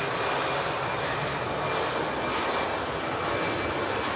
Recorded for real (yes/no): yes